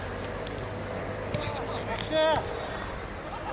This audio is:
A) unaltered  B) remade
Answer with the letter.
A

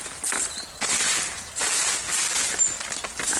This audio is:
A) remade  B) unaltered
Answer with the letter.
B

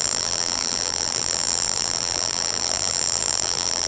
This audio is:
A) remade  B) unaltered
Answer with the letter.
A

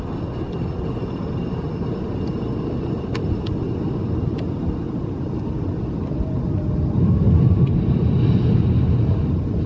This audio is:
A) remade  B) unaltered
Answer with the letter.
B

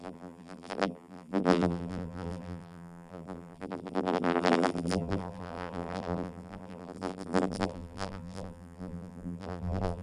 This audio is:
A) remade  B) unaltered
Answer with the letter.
A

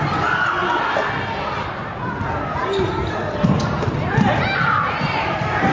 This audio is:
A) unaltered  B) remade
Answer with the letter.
A